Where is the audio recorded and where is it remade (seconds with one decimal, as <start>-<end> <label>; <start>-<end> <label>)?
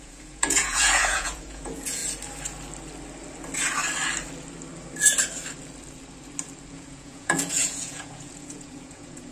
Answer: 0.0-2.0 remade; 2.0-6.7 recorded; 6.7-9.3 remade